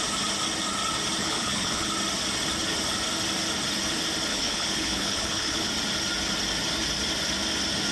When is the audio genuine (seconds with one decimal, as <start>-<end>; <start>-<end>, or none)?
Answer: 0.0-1.2; 1.9-4.3; 5.7-7.9